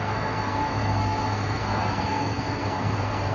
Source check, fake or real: fake